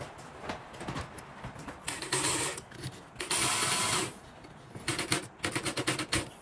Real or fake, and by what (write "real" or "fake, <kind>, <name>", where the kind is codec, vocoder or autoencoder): real